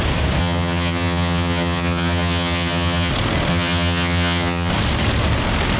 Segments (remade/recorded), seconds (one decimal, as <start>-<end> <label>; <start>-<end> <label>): 0.0-0.4 recorded; 0.4-3.1 remade; 3.1-3.5 recorded; 3.5-4.7 remade; 4.7-5.8 recorded